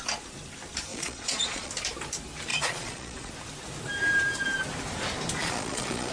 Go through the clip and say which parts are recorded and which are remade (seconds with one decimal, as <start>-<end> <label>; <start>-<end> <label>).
0.0-0.9 recorded; 0.9-1.7 remade; 1.7-2.5 recorded; 2.5-3.3 remade; 3.3-5.4 recorded; 5.4-6.1 remade